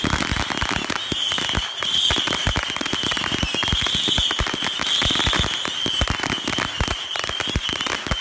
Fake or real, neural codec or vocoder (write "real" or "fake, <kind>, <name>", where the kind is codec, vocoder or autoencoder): real